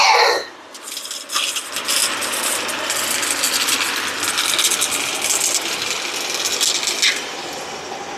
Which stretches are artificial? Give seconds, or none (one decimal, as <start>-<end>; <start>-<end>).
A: none